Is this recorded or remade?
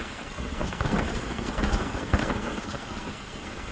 remade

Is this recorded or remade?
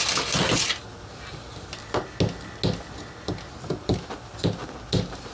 recorded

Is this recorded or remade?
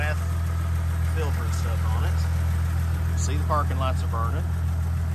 recorded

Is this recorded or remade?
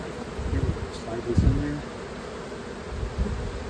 recorded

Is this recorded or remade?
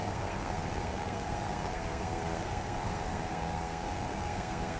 remade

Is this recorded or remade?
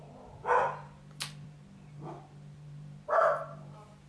recorded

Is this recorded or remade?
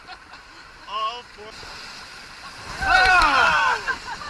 recorded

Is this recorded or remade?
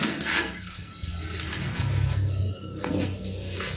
remade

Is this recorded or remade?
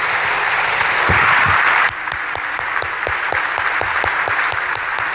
recorded